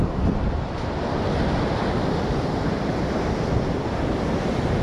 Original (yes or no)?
yes